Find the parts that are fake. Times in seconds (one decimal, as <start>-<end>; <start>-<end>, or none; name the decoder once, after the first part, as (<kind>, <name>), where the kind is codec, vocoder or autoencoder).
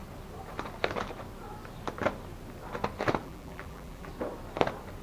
3.2-4.1 (vocoder, BigVGAN v2)